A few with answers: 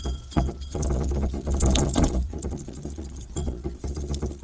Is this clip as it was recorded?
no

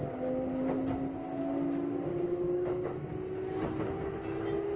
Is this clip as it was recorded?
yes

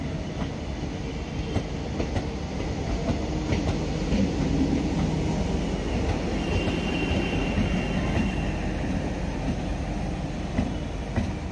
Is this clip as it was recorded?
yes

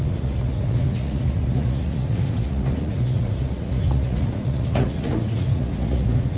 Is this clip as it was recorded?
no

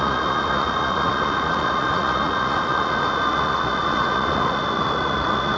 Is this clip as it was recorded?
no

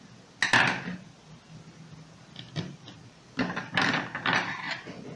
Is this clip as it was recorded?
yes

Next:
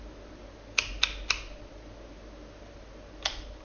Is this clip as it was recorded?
yes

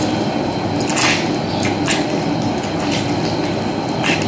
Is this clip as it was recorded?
yes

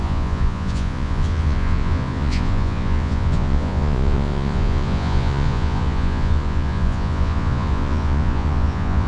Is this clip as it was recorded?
no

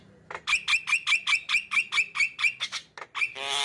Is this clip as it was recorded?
yes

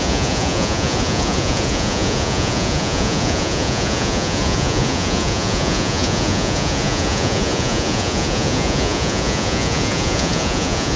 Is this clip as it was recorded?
no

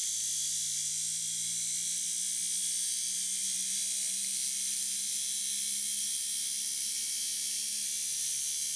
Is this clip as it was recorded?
yes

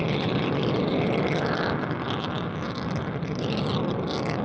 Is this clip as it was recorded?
yes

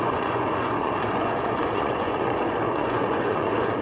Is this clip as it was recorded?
no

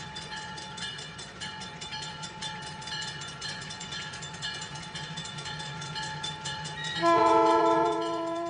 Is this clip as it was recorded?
no